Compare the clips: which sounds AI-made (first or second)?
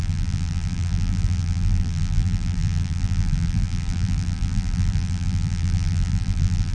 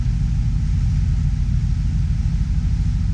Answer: first